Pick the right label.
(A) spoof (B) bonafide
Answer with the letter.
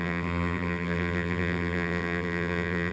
A